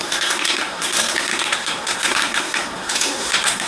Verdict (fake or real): fake